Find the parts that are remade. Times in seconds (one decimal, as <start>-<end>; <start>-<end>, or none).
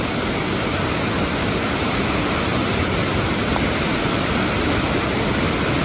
none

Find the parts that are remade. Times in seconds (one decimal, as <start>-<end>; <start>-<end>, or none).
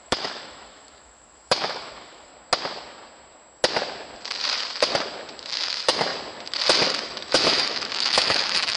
0.0-2.3; 5.4-6.1; 6.9-8.8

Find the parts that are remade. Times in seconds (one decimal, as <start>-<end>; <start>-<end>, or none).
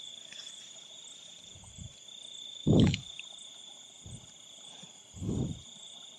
2.5-3.0